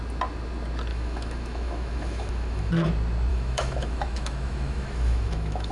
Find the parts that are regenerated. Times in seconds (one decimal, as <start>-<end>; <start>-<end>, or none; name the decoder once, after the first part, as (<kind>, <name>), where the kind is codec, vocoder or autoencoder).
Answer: 0.9-2.7 (autoencoder, DAC-VAE); 3.3-5.7